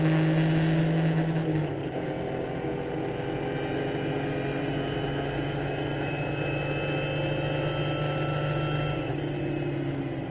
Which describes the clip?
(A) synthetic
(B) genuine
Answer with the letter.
B